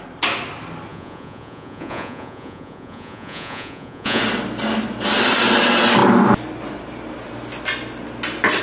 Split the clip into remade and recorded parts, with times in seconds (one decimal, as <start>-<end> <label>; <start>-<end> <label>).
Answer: 0.0-0.9 recorded; 0.9-4.2 remade; 4.2-8.6 recorded

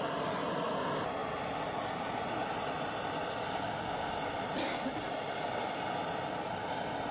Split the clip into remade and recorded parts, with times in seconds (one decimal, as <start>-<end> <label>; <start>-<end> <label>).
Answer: 0.0-7.1 recorded

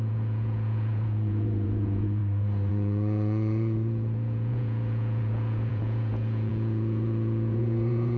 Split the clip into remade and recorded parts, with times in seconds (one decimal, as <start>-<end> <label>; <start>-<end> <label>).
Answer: 0.0-2.2 remade; 2.2-2.7 recorded; 2.7-8.2 remade

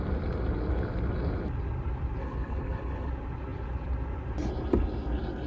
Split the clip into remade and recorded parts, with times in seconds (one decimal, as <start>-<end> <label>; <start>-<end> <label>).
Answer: 0.0-2.2 recorded; 2.2-3.1 remade; 3.1-5.5 recorded

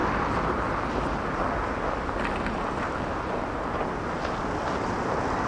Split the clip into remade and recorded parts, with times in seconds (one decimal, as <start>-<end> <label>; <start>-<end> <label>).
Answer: 0.0-5.5 recorded

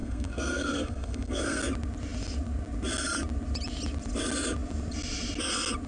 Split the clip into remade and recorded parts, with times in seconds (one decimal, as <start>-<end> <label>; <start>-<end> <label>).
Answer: 0.0-1.6 remade; 1.6-5.9 recorded

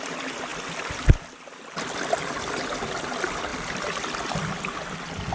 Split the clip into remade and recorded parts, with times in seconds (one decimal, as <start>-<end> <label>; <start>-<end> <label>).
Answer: 0.0-5.3 recorded

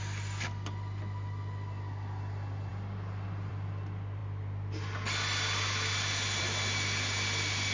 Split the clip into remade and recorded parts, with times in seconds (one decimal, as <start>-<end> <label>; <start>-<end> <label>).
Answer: 0.0-7.7 recorded